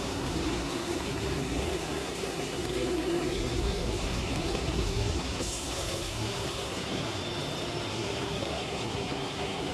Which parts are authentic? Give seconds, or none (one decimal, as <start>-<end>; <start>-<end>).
7.2-7.9